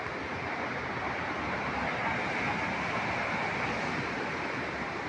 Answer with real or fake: real